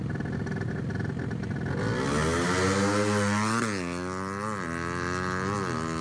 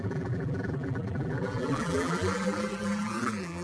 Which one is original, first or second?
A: first